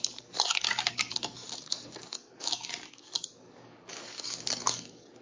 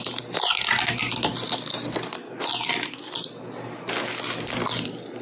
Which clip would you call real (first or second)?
second